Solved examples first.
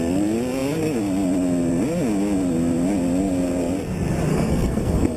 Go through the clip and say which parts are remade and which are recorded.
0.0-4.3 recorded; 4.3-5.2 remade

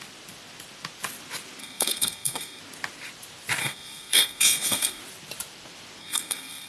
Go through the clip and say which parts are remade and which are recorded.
0.0-1.6 recorded; 1.6-2.6 remade; 2.6-3.6 recorded; 3.6-5.0 remade; 5.0-6.0 recorded; 6.0-6.7 remade